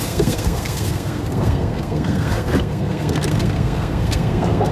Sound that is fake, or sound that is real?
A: fake